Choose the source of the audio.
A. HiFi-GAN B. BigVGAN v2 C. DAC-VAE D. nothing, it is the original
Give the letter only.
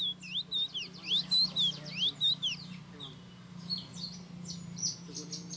D